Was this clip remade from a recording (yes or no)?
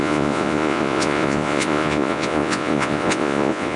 yes